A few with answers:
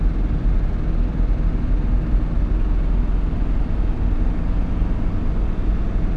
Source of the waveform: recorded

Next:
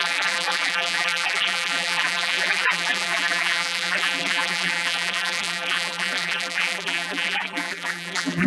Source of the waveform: remade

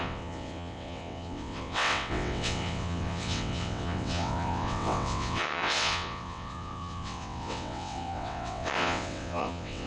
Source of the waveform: remade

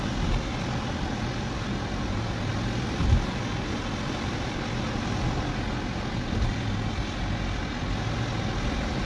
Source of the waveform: recorded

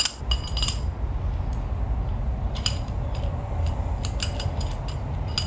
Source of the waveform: recorded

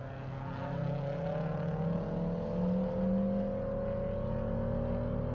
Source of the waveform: recorded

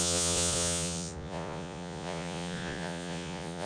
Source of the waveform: remade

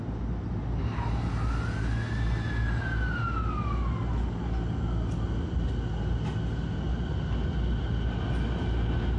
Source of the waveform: recorded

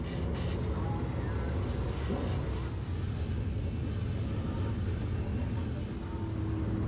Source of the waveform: recorded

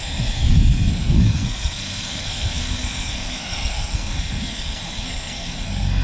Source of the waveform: remade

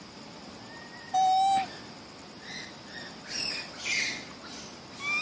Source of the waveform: recorded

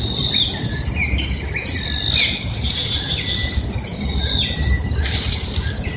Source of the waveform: recorded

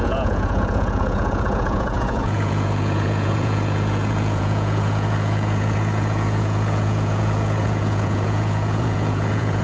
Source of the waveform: remade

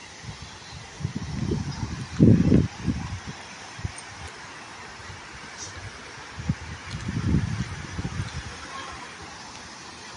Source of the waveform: recorded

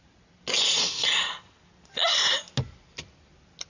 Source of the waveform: recorded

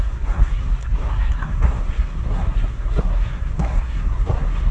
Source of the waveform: remade